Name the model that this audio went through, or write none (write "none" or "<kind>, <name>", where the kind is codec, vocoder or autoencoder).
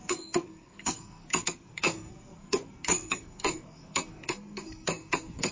codec, SNAC